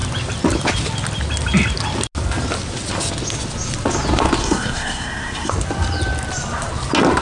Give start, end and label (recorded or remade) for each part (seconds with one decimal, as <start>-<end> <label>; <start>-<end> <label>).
0.0-4.4 recorded; 4.4-5.5 remade; 5.5-7.2 recorded